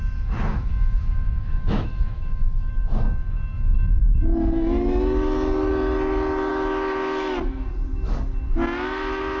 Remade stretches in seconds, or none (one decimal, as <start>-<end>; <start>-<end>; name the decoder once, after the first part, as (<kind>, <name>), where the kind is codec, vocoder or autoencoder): 0.5-2.7 (autoencoder, DAC-VAE)